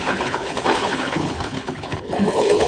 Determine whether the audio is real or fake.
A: fake